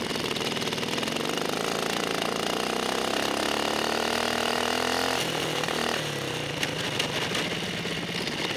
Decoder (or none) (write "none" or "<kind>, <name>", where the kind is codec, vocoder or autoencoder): none